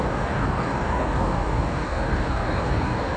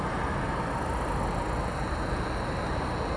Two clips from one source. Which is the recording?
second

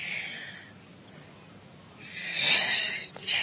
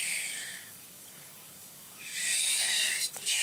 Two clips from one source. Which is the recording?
first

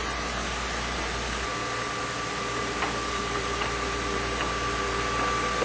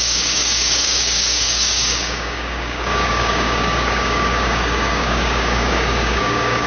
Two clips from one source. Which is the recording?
first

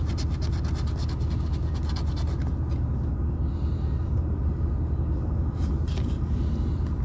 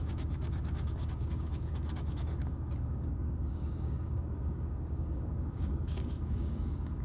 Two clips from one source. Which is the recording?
first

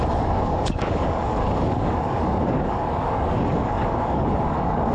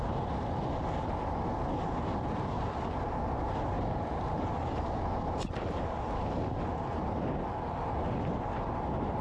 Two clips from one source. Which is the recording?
second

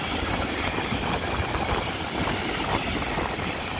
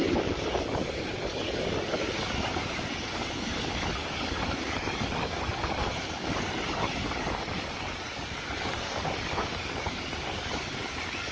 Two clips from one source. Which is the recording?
first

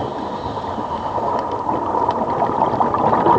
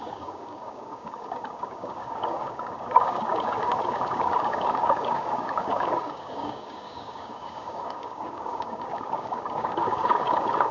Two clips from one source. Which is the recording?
first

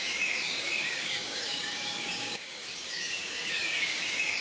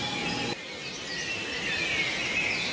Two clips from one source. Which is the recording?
second